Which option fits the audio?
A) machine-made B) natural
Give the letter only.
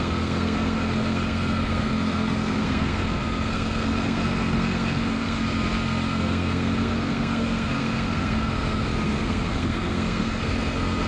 A